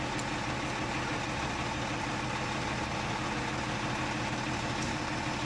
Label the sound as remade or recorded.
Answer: recorded